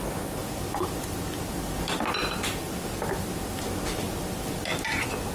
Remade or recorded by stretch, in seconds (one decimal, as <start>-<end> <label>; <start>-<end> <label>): 0.0-5.3 recorded